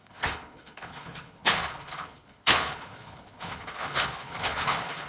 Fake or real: fake